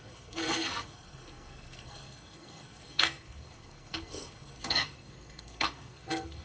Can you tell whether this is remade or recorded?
remade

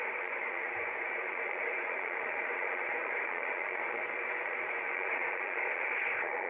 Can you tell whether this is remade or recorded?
remade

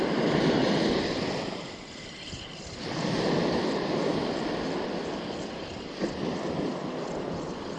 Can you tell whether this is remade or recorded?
recorded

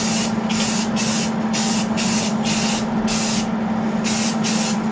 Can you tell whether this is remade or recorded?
recorded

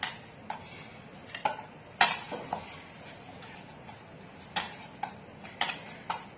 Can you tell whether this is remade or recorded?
recorded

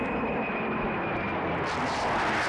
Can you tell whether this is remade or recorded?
recorded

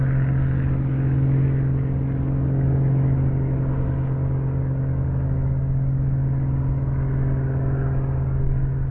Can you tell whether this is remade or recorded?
recorded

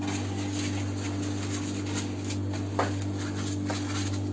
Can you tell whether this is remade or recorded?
recorded